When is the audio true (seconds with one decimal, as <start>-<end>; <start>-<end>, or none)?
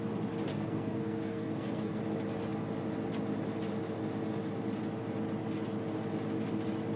0.0-0.5; 2.0-7.0